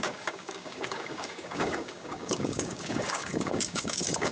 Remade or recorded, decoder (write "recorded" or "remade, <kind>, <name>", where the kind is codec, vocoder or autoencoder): remade, codec, DAC